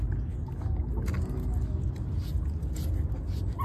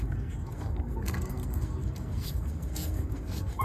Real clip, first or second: first